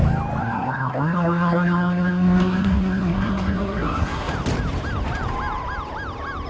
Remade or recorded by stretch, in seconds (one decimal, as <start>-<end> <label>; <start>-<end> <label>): 0.0-0.4 recorded; 0.4-4.3 remade; 4.3-6.5 recorded